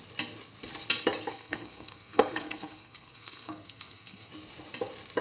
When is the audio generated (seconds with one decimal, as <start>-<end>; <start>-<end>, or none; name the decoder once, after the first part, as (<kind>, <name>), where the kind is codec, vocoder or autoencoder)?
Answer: 1.3-4.3 (codec, SNAC)